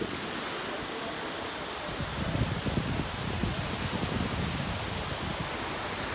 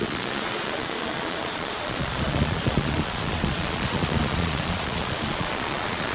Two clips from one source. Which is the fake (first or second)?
second